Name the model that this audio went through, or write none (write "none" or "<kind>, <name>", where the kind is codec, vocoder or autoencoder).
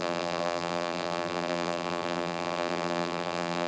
vocoder, BigVGAN v2